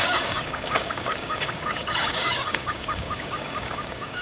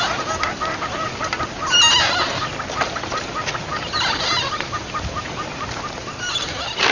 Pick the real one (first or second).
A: second